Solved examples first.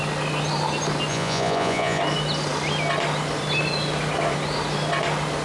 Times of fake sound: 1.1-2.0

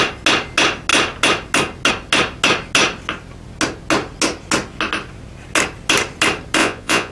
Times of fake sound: 6.6-7.1

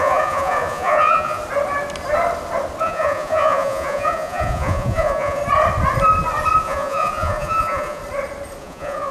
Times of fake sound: 0.0-1.4; 2.8-5.4; 6.6-8.0; 8.6-9.1

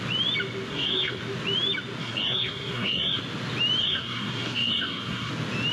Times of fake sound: 0.7-1.2; 2.0-3.2; 3.8-5.3

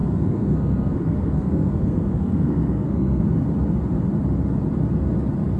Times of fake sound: 0.0-3.2